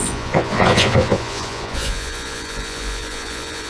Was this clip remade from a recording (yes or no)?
yes